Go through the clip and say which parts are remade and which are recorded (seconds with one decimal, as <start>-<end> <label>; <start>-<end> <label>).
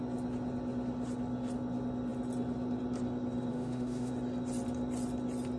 0.0-3.5 recorded; 3.5-4.1 remade; 4.1-5.6 recorded